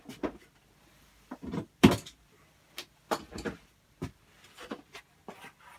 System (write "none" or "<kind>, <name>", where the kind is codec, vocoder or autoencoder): vocoder, BigVGAN v2